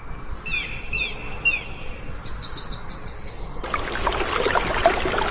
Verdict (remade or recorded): recorded